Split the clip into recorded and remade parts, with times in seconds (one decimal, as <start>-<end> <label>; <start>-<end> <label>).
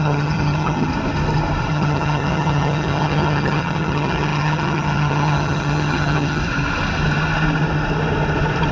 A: 0.0-0.9 remade; 0.9-1.7 recorded; 1.7-6.4 remade; 6.4-8.7 recorded